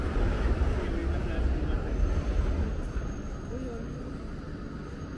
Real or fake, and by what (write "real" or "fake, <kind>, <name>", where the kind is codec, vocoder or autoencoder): real